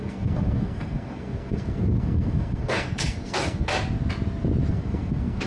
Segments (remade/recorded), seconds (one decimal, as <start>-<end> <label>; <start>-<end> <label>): 0.0-3.7 remade; 3.7-4.7 recorded; 4.7-5.5 remade